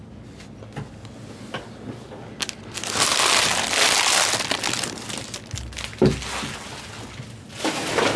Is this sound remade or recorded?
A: recorded